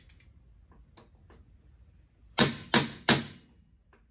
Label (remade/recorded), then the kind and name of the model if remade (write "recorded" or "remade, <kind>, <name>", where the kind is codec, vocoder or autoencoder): recorded